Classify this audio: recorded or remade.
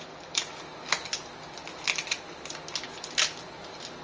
recorded